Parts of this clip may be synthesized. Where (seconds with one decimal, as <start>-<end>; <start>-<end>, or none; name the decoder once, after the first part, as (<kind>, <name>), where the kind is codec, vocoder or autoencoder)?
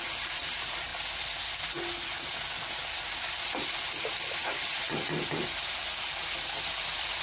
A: 0.0-0.9 (vocoder, BigVGAN v2); 3.2-5.8; 6.6-7.2